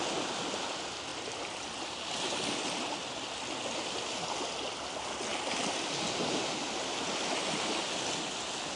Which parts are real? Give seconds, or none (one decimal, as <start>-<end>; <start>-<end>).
0.0-8.8